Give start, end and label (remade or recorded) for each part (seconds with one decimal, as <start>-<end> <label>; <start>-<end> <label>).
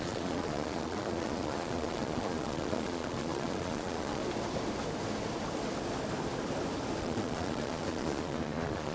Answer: 0.0-4.2 remade; 4.2-7.0 recorded; 7.0-8.9 remade